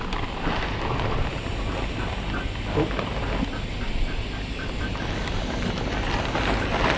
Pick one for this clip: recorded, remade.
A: recorded